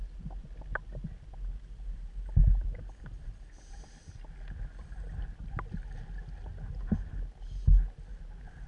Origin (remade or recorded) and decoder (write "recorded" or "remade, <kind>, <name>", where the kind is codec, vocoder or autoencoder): recorded